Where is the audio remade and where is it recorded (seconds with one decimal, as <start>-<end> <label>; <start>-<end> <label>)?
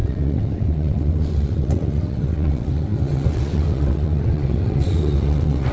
0.0-5.7 remade